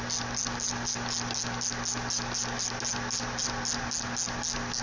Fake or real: real